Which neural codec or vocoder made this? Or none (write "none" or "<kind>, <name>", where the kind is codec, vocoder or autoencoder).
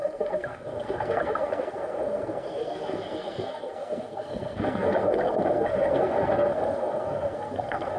codec, SNAC